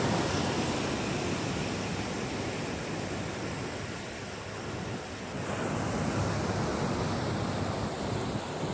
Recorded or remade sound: recorded